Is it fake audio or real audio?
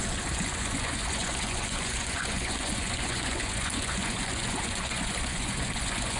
fake